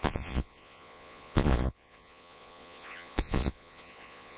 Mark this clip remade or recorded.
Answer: remade